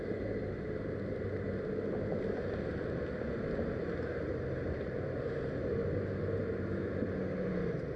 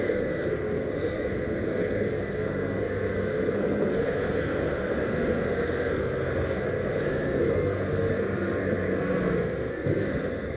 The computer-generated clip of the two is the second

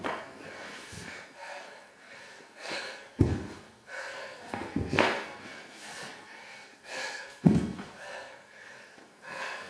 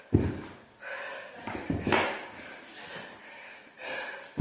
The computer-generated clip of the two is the first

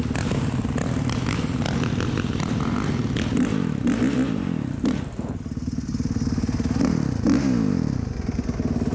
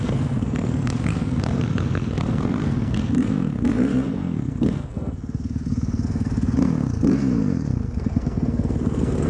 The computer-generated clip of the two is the second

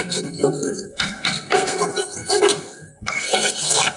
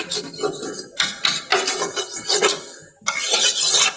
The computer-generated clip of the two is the first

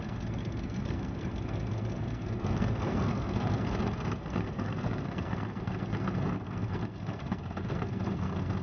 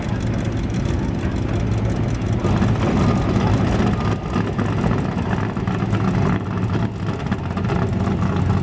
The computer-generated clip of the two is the first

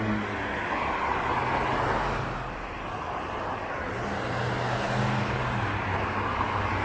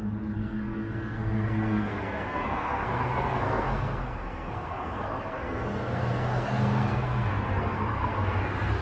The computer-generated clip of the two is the second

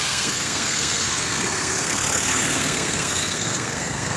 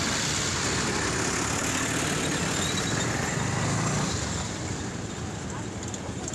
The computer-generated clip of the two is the first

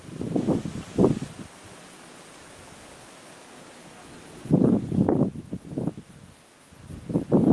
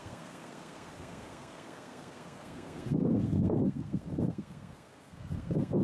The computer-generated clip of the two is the second